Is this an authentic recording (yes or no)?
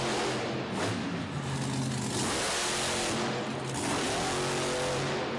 yes